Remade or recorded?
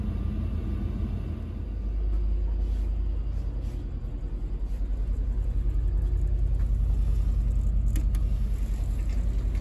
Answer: recorded